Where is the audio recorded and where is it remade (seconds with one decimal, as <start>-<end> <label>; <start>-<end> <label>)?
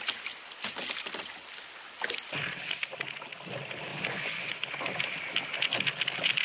0.0-3.9 recorded; 3.9-4.9 remade; 4.9-6.4 recorded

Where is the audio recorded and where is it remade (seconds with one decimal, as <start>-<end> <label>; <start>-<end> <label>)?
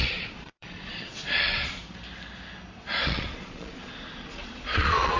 0.0-1.8 remade; 1.8-2.8 recorded; 2.8-5.2 remade